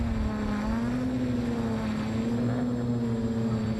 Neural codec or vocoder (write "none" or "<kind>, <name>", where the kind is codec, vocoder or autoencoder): none